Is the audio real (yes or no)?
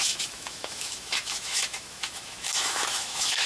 no